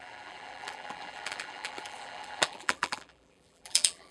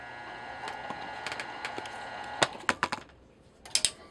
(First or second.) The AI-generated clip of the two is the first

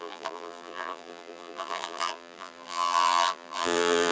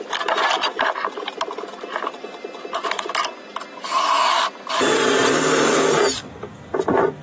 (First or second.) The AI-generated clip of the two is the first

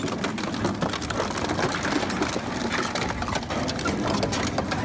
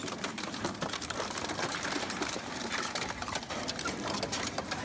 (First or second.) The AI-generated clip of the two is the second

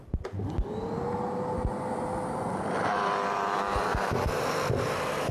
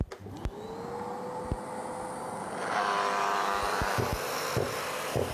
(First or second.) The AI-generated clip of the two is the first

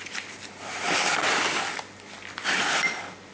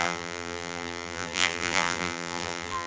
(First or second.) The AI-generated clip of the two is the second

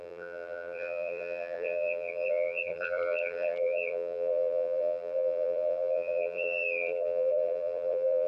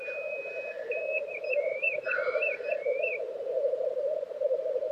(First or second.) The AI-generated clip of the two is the first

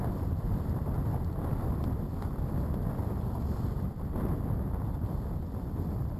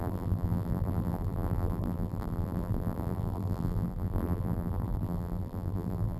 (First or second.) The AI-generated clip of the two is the second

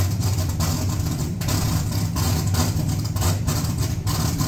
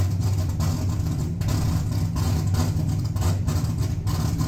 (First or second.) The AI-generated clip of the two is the first